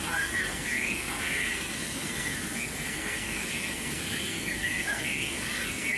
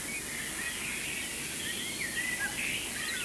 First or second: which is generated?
first